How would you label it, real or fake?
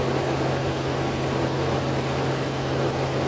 real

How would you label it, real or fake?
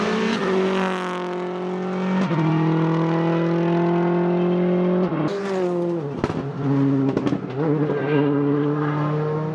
real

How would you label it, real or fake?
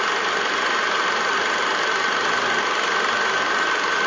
real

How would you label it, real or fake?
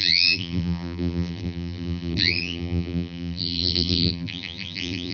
fake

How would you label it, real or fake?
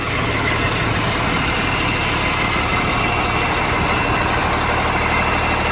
real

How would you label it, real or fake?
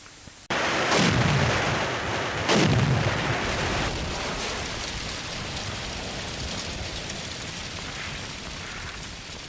fake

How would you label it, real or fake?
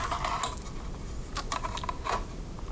real